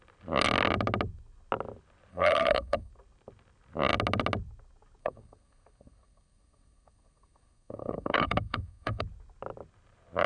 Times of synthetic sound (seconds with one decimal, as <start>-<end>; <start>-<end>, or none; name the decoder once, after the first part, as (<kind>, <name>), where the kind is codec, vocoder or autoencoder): 2.1-2.9 (codec, SNAC); 5.0-9.0